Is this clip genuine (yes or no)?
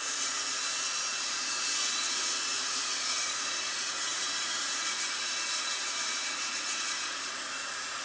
no